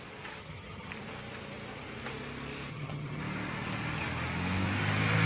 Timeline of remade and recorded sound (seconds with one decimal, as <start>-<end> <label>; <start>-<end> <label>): 0.0-0.4 recorded; 0.4-0.9 remade; 0.9-2.7 recorded; 2.7-3.2 remade; 3.2-5.3 recorded